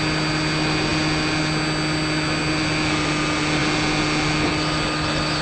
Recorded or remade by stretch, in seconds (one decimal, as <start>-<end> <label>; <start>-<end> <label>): 0.0-5.4 recorded